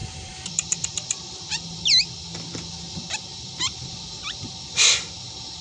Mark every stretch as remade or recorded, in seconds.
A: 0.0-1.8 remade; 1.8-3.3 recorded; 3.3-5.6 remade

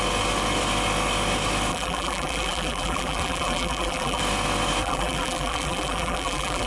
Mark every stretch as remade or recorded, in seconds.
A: 0.0-1.7 recorded; 1.7-4.2 remade; 4.2-4.8 recorded; 4.8-6.7 remade

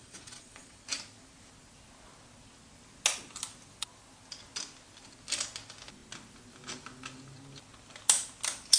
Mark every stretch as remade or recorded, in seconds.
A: 0.0-0.8 remade; 0.8-8.8 recorded

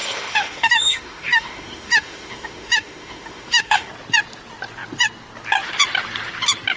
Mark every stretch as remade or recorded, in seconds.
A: 0.0-3.9 remade; 3.9-6.8 recorded

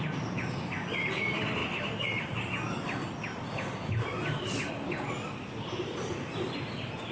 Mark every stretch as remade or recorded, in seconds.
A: 0.0-7.1 recorded